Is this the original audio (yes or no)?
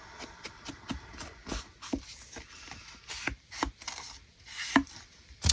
yes